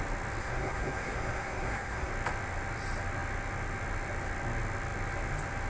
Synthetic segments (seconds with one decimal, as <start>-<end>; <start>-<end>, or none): 0.4-2.1